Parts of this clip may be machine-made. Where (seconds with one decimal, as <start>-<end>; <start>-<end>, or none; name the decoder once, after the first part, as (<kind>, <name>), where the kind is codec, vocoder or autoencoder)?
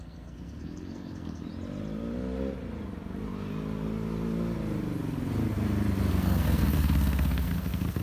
0.0-1.5 (codec, SNAC); 6.1-8.0